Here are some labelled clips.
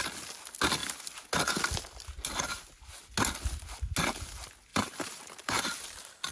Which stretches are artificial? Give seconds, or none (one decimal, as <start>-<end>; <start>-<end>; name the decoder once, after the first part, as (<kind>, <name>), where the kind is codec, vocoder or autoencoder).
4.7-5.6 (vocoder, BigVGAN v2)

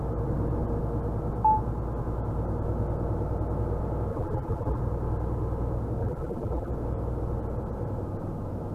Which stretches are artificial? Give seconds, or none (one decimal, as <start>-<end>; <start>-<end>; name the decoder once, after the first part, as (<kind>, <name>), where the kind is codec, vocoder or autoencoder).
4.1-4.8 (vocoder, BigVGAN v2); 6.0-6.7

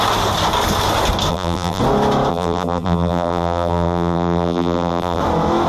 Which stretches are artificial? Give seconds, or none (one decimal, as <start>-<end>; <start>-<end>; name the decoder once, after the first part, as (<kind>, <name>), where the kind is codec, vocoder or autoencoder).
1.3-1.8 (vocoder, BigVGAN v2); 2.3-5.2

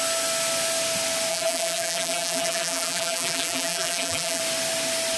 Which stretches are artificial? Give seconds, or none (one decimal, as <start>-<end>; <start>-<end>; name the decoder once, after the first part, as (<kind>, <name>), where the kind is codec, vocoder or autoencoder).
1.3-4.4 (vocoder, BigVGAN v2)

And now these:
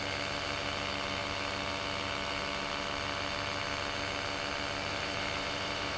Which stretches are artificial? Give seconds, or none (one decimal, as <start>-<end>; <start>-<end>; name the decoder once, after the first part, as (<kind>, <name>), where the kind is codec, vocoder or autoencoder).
4.9-6.0 (vocoder, BigVGAN v2)

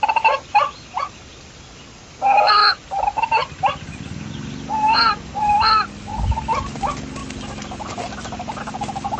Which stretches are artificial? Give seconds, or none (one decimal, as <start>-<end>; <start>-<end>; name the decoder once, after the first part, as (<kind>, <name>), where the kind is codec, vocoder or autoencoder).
none

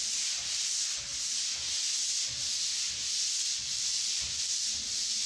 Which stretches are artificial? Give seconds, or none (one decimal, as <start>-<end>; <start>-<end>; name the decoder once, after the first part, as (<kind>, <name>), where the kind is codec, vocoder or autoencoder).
0.0-1.1 (vocoder, BigVGAN v2); 3.5-5.3